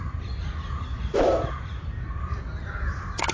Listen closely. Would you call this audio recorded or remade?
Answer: remade